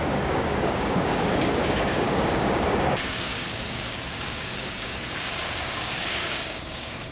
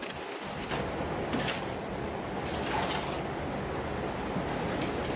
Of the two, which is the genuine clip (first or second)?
second